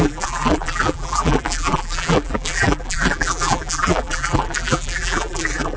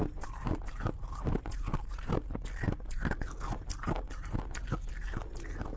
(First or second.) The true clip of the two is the second